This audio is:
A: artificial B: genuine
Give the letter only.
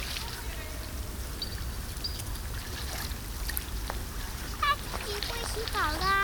B